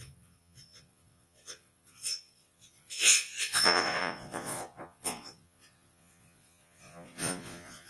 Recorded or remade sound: remade